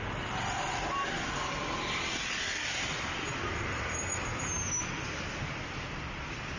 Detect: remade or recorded recorded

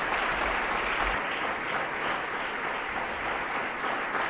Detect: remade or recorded recorded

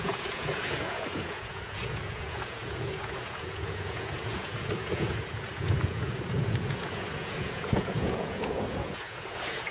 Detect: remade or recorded remade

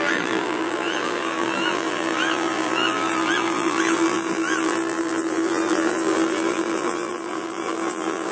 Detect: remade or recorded remade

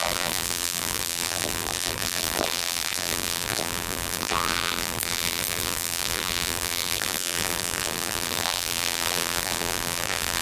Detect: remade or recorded remade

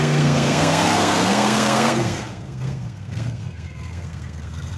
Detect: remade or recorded remade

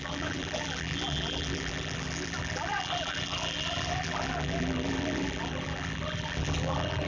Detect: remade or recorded remade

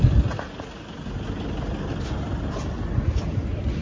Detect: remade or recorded recorded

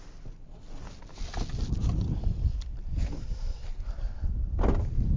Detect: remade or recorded recorded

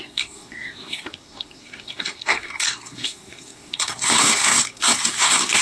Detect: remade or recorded remade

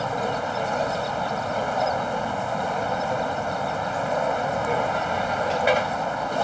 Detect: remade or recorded recorded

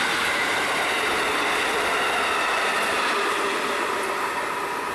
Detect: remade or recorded recorded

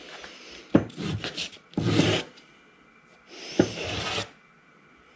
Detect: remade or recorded recorded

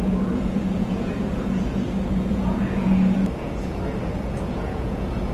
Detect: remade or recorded remade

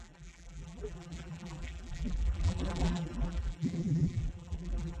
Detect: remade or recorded remade